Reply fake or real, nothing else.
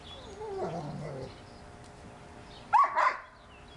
real